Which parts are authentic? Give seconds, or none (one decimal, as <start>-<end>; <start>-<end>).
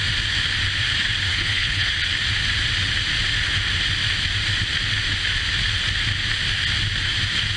0.0-1.3; 1.9-7.6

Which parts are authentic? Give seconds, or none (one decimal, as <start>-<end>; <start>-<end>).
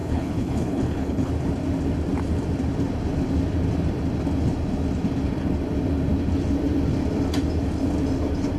1.3-8.6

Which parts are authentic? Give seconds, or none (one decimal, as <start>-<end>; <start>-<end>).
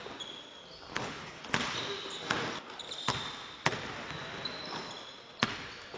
0.0-0.9; 1.4-6.0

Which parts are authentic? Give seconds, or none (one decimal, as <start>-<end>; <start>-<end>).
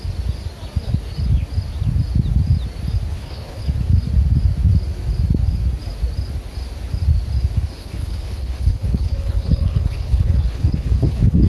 0.0-3.1; 3.6-7.8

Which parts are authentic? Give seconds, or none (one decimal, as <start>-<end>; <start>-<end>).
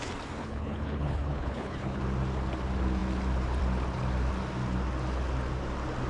0.0-0.4; 2.0-6.1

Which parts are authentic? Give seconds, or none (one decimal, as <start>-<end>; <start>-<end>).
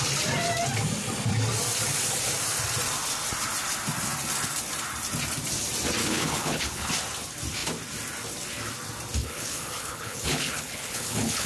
0.0-6.0; 6.9-9.2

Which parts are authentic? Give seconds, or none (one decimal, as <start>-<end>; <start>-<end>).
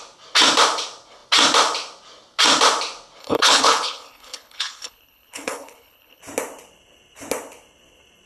0.0-3.2; 6.2-8.3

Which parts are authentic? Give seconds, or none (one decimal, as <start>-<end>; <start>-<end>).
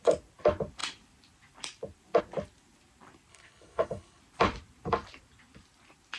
0.0-3.3; 4.2-6.2